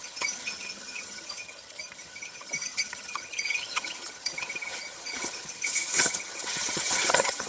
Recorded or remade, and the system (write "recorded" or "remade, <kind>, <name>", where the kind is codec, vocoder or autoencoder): remade, vocoder, HiFi-GAN